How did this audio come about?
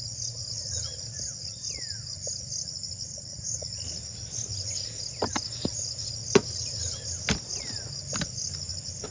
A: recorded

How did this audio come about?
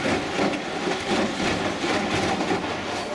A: recorded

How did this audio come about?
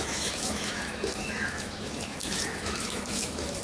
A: remade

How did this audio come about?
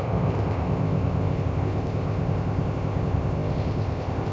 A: remade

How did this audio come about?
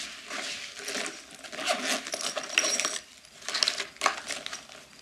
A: recorded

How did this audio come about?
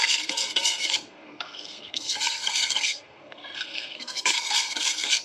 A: remade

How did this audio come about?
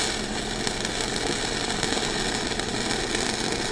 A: recorded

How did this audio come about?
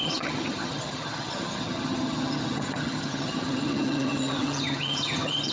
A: remade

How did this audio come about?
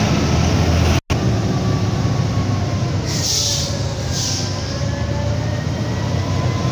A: recorded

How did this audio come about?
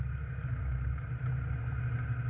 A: recorded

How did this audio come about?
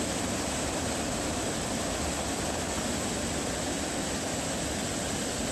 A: remade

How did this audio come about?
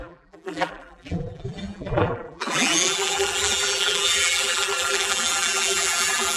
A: remade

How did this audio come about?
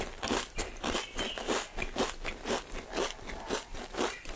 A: recorded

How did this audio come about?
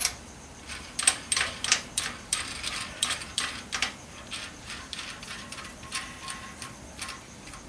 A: remade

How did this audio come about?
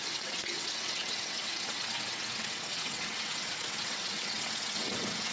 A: remade